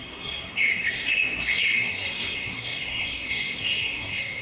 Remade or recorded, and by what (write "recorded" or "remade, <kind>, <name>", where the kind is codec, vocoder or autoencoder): remade, codec, SNAC